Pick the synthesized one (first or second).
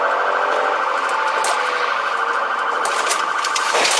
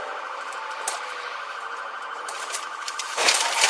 second